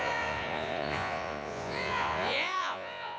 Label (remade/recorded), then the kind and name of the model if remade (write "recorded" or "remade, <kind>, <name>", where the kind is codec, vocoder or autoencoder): remade, vocoder, Vocos